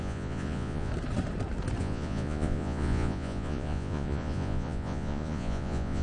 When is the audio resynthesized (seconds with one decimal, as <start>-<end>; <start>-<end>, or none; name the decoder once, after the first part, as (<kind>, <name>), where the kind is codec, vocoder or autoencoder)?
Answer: 0.0-0.9 (vocoder, Vocos); 1.8-6.0